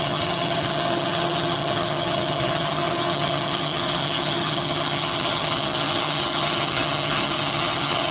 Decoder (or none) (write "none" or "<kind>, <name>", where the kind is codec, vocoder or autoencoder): vocoder, HiFi-GAN